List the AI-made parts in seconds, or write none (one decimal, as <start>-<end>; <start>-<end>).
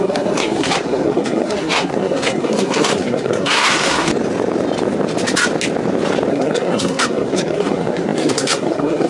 0.0-4.1; 6.3-9.1